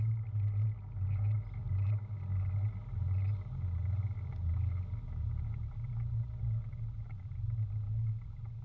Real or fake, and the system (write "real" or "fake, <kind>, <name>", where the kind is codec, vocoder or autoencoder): real